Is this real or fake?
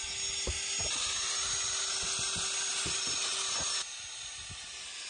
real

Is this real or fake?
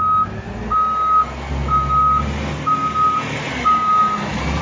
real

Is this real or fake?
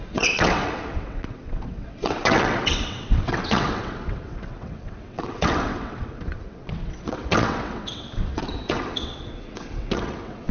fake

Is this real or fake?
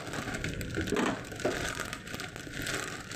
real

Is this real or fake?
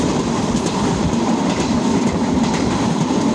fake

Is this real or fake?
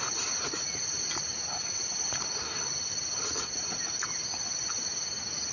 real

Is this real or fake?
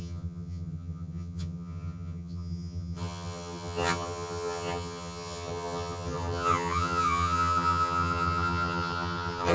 fake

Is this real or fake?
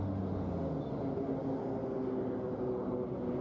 real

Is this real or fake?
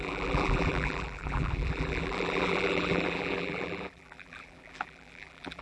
fake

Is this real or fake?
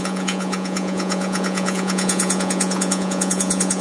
fake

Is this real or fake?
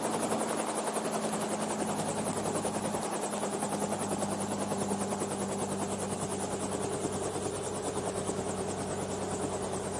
real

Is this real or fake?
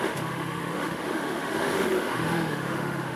fake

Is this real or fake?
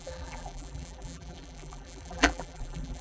fake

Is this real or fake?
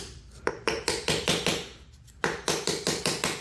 fake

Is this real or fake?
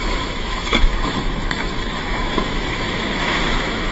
fake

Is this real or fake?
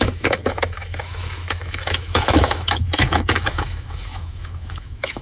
fake